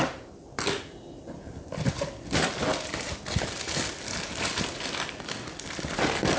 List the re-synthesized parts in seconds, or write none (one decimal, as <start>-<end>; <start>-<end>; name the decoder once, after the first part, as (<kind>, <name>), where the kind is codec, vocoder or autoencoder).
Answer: 0.0-2.7 (vocoder, BigVGAN v2); 4.3-6.4